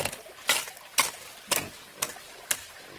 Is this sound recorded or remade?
recorded